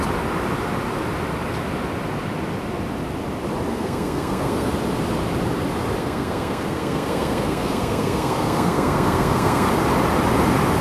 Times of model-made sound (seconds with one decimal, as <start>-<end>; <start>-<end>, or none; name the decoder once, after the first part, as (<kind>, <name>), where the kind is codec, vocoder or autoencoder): 3.7-4.7 (codec, SNAC); 6.0-9.7